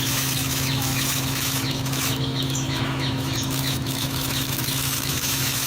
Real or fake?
fake